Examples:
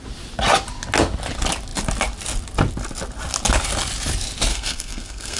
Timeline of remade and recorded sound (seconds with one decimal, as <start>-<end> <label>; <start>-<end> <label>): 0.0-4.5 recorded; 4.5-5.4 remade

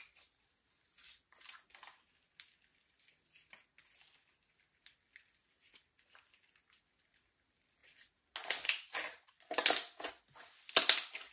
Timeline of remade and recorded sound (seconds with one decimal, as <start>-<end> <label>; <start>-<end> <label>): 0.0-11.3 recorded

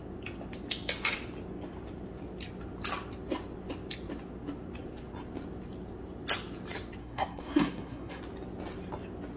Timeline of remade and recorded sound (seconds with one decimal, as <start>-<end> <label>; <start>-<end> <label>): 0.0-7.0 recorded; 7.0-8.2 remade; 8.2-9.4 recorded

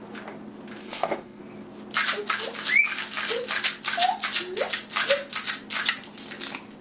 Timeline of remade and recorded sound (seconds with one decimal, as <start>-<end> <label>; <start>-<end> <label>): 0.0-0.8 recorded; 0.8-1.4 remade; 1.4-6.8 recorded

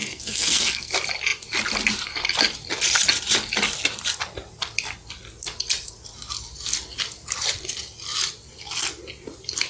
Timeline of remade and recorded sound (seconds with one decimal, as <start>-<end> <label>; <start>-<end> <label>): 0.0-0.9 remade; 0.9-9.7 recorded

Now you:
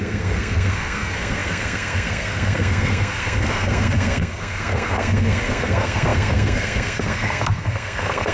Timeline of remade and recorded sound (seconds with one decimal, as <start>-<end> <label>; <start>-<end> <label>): 0.0-8.3 remade